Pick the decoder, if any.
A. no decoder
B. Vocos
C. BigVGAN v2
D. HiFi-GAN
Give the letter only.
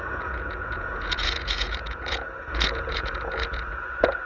B